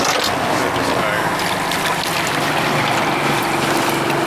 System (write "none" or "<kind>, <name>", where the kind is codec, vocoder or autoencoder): none